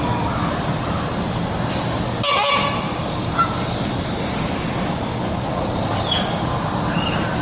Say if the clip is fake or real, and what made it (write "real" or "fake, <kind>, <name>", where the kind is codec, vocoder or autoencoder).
real